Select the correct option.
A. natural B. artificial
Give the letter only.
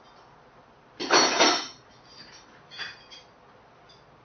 A